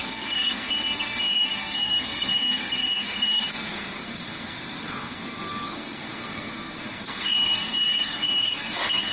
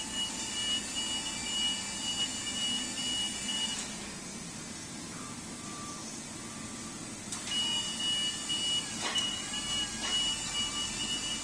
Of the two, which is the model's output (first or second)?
first